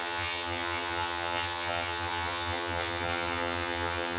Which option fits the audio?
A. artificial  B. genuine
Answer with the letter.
A